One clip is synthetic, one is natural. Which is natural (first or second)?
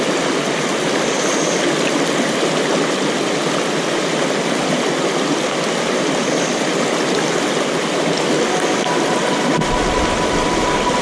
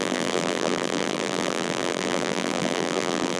first